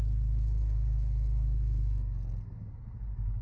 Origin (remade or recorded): remade